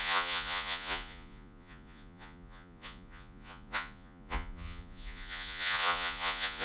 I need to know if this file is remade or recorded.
remade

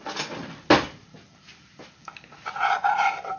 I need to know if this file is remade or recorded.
recorded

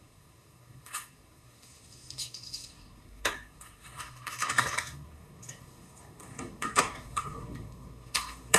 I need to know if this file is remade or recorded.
remade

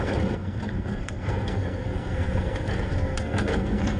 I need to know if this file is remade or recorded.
remade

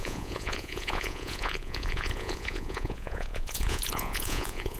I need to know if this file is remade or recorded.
remade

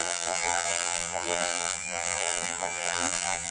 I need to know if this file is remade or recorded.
remade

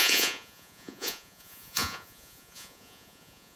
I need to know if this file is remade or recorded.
remade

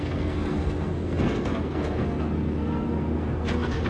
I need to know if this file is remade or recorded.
remade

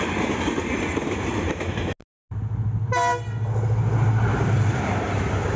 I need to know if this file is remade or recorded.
recorded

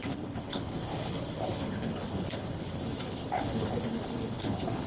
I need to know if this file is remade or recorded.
remade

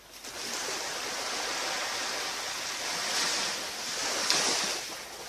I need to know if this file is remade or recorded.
recorded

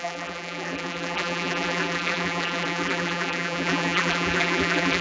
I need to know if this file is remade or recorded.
remade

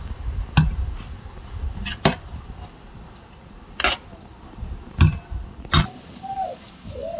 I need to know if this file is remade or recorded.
recorded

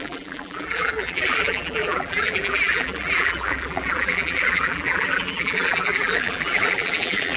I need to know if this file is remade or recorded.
remade